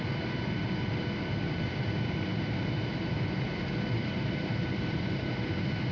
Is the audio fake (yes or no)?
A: yes